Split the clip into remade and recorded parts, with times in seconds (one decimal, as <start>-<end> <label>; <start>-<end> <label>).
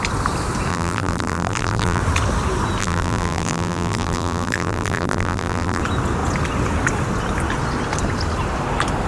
0.0-0.7 recorded; 0.7-2.0 remade; 2.0-2.8 recorded; 2.8-5.8 remade; 5.8-9.1 recorded